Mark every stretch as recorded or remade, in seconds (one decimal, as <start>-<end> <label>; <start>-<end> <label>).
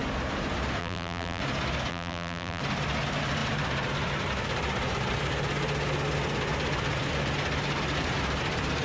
0.0-0.8 recorded; 0.8-1.4 remade; 1.4-1.9 recorded; 1.9-2.6 remade; 2.6-8.8 recorded